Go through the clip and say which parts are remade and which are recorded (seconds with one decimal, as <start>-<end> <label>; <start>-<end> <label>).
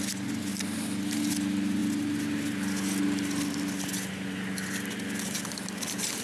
0.0-6.2 recorded